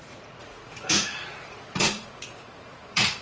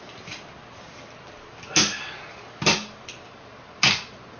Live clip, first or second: second